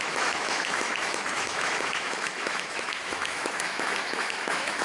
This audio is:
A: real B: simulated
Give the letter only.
B